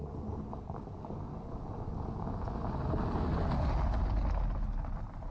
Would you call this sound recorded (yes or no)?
yes